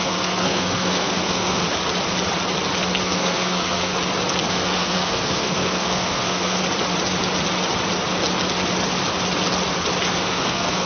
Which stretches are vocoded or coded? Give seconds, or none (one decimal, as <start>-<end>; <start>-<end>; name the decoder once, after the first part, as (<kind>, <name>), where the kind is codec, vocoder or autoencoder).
0.0-1.6 (codec, SNAC); 3.0-3.9; 4.5-6.6; 10.1-10.9